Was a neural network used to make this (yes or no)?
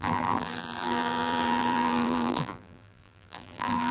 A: yes